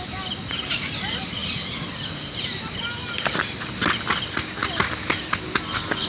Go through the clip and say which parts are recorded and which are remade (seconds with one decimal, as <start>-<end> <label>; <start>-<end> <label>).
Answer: 0.0-6.1 recorded